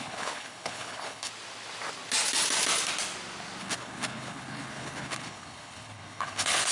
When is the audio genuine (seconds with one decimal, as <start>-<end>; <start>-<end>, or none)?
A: 1.3-3.6